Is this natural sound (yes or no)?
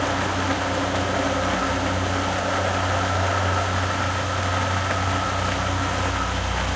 yes